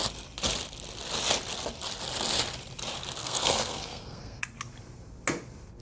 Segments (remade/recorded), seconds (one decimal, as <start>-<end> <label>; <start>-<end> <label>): 0.0-3.2 recorded; 3.2-4.4 remade; 4.4-5.8 recorded